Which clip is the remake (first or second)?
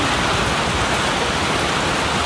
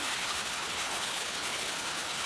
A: second